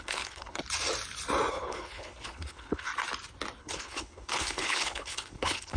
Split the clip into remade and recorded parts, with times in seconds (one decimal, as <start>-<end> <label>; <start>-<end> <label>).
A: 0.0-0.6 remade; 0.6-1.5 recorded; 1.5-2.9 remade; 2.9-3.6 recorded; 3.6-5.8 remade